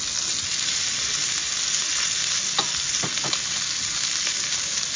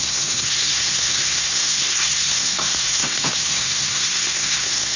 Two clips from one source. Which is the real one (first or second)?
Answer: first